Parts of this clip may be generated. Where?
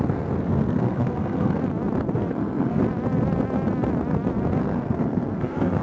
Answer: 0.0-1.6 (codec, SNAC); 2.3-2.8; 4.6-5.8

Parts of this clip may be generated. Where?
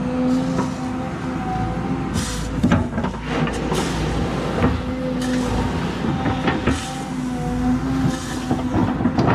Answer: 8.8-9.3 (vocoder, BigVGAN v2)